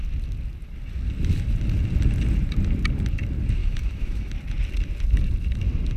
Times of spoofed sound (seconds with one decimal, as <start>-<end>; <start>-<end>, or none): 3.6-4.3